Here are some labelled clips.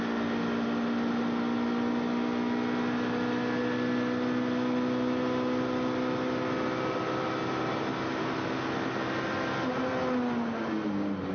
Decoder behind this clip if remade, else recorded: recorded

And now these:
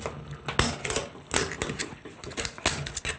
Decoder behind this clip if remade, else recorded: recorded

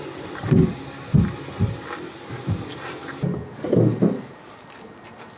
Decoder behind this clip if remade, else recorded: recorded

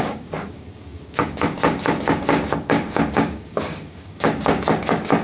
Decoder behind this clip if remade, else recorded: remade, codec, DAC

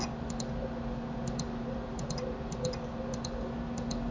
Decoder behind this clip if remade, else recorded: recorded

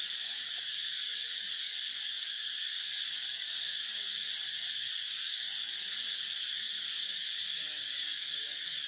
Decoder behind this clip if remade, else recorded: remade, codec, DAC